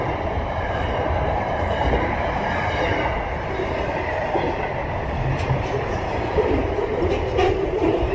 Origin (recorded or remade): remade